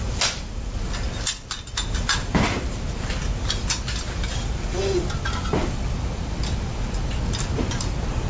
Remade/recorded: recorded